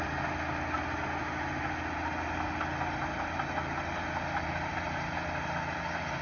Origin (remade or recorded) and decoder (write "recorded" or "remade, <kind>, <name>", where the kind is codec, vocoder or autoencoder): recorded